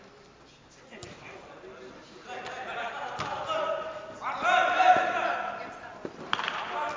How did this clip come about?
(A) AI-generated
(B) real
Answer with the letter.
B